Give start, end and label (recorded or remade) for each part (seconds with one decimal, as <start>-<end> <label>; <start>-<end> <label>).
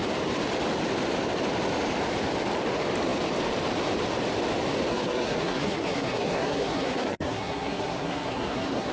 0.0-4.9 recorded; 4.9-8.9 remade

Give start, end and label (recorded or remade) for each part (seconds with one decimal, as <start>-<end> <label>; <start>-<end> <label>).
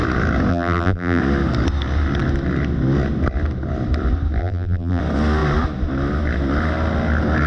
0.0-0.5 recorded; 0.5-1.2 remade; 1.2-4.4 recorded; 4.4-5.0 remade; 5.0-7.5 recorded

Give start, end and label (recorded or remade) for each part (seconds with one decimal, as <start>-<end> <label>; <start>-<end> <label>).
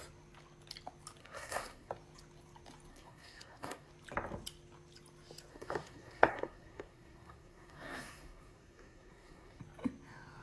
0.0-1.2 recorded; 1.2-1.9 remade; 1.9-2.9 recorded; 2.9-3.9 remade; 3.9-5.5 recorded; 5.5-9.6 remade; 9.6-10.4 recorded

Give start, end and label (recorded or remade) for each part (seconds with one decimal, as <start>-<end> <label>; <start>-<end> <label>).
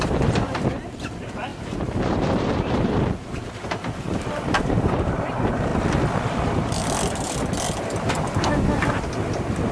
0.0-5.7 remade; 5.7-9.7 recorded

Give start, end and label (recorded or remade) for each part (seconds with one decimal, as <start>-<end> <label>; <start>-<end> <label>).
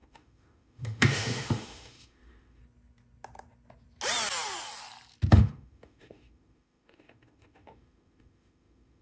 0.0-2.6 remade; 2.6-5.3 recorded; 5.3-9.0 remade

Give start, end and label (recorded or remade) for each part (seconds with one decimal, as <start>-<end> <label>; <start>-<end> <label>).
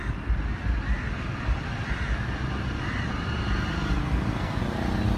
0.0-4.0 recorded; 4.0-4.6 remade; 4.6-5.2 recorded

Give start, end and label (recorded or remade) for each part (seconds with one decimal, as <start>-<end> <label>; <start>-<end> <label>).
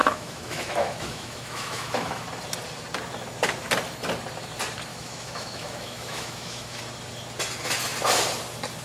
0.0-2.2 remade; 2.2-4.9 recorded; 4.9-6.8 remade; 6.8-8.8 recorded